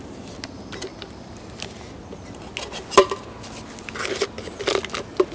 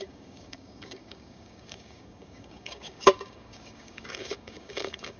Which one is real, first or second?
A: first